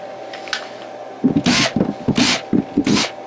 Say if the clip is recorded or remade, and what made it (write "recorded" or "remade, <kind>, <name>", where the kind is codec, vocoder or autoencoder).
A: recorded